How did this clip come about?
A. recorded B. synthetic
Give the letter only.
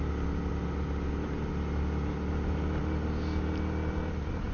A